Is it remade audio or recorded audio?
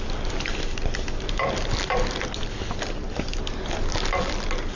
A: recorded